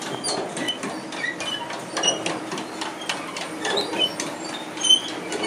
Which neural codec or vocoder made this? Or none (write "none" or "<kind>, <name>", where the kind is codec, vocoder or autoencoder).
none